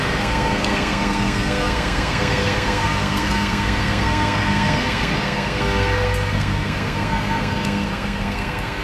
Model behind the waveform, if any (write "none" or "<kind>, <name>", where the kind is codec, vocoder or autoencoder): codec, SNAC